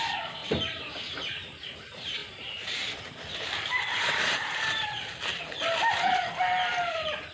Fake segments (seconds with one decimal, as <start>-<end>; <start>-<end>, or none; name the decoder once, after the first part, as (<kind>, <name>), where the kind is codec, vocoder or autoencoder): 0.0-7.3 (vocoder, BigVGAN v2)